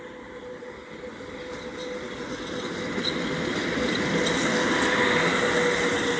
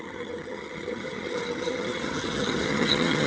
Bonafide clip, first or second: first